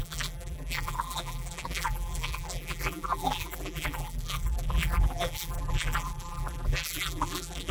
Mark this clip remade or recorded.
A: remade